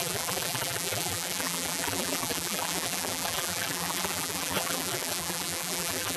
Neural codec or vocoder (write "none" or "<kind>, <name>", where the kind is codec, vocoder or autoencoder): vocoder, BigVGAN v2